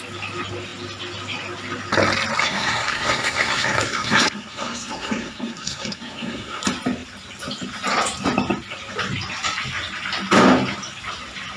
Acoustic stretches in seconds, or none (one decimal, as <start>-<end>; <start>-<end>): 0.0-2.4; 6.6-11.6